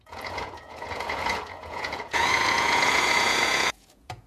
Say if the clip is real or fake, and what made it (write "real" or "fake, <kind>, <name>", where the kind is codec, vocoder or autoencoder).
fake, vocoder, Vocos